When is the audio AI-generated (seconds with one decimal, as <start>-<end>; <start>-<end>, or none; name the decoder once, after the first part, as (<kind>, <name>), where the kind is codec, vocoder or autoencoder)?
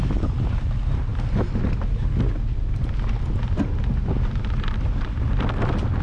none